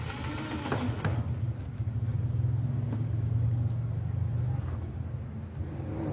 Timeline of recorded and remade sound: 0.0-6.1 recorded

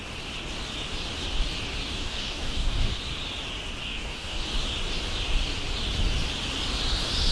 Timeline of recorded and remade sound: 0.0-1.9 recorded; 1.9-3.0 remade; 3.0-3.8 recorded; 3.8-4.4 remade; 4.4-7.3 recorded

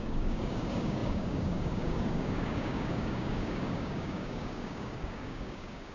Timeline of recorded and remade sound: 0.0-5.9 remade

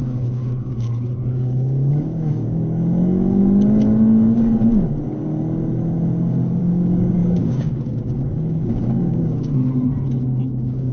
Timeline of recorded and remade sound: 0.0-3.4 remade; 3.4-6.6 recorded; 6.6-9.6 remade; 9.6-10.4 recorded; 10.4-10.9 remade

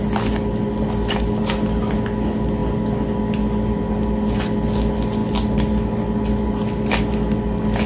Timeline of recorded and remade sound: 0.0-7.9 recorded

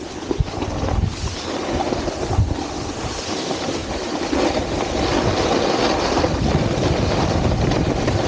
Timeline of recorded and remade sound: 0.0-8.3 recorded

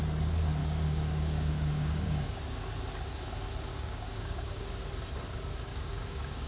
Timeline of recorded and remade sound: 0.0-0.6 recorded; 0.6-2.4 remade; 2.4-3.7 recorded; 3.7-4.8 remade; 4.8-5.7 recorded; 5.7-6.5 remade

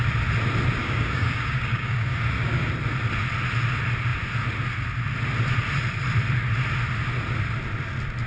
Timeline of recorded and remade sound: 0.0-0.8 recorded; 0.8-2.7 remade; 2.7-8.3 recorded